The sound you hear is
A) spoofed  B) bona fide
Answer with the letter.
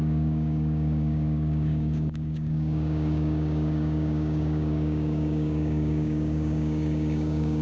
A